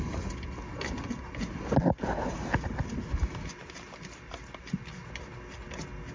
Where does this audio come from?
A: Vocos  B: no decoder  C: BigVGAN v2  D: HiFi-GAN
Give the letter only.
B